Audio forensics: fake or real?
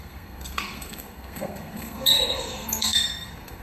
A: fake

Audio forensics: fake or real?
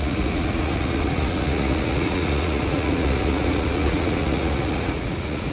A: fake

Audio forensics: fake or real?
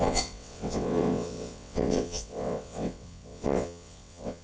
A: fake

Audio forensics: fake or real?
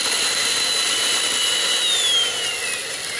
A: real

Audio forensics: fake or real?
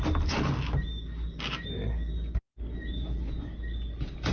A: real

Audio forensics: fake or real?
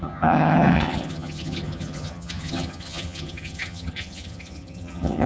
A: fake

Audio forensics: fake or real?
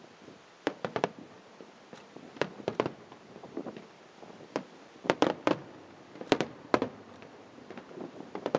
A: fake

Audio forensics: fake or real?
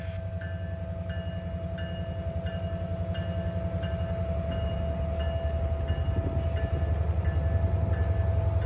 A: real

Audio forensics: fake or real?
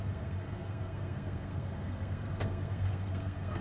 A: fake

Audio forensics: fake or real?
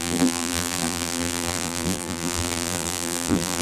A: fake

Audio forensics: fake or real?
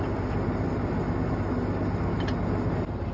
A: real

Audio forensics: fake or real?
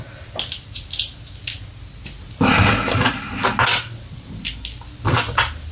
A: real